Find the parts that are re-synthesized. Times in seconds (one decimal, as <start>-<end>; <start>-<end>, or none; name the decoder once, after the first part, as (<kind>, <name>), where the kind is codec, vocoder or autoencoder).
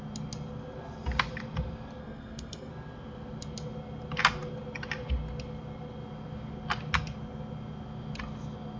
2.0-2.7 (codec, SNAC)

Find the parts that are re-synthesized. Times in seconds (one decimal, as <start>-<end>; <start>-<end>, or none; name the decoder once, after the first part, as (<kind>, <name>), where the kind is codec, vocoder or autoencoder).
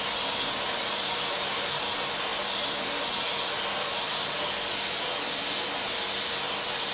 none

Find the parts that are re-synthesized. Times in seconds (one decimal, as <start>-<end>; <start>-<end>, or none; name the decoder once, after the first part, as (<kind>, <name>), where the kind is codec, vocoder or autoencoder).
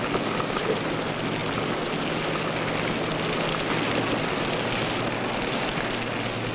none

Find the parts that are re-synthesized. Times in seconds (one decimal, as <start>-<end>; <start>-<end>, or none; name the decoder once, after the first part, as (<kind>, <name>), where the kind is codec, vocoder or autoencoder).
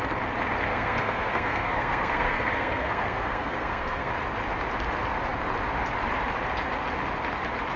0.7-4.1 (codec, SNAC)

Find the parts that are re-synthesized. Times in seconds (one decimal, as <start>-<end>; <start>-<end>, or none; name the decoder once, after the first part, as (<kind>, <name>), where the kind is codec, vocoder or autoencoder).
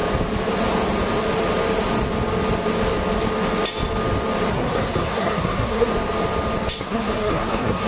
4.5-5.9 (codec, SNAC); 6.8-7.9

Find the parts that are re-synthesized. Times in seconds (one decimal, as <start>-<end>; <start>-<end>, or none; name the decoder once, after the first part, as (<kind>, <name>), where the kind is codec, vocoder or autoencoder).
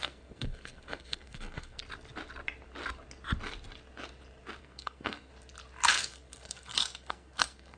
0.0-1.8 (codec, SNAC); 4.6-5.3; 5.9-7.8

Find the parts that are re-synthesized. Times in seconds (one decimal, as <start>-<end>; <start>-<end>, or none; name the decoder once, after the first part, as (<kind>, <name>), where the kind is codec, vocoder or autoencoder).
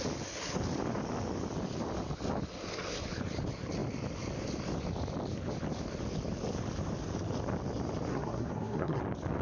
8.1-9.0 (codec, SNAC)